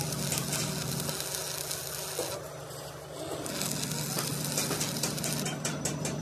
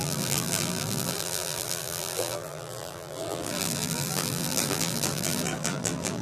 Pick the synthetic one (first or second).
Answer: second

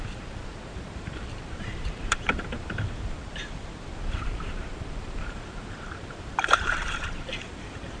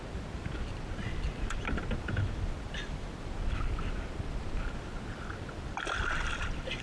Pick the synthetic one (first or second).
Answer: first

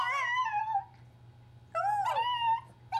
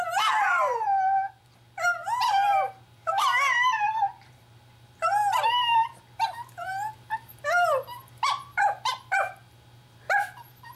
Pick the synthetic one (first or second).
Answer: second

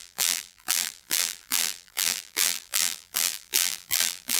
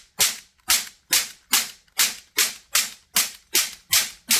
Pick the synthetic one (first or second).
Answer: first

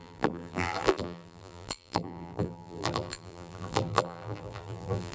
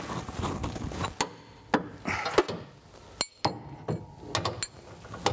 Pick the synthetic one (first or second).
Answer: first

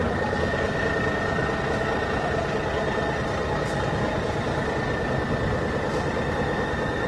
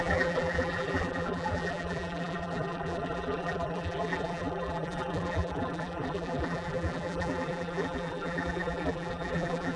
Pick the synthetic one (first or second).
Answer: second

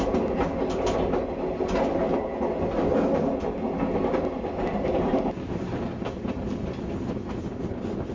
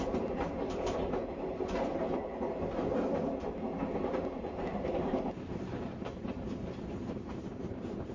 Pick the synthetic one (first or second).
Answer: second